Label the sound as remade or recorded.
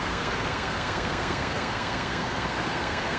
remade